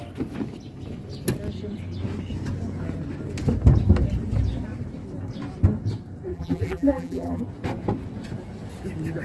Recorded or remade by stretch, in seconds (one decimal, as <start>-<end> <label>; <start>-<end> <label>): 0.0-6.3 recorded; 6.3-7.4 remade; 7.4-9.2 recorded